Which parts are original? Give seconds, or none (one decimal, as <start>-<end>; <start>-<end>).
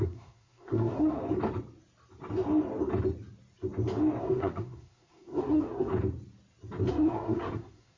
1.2-4.2; 5.9-6.9